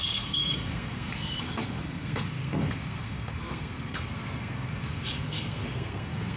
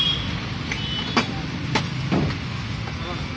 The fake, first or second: first